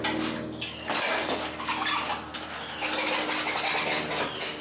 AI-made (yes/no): no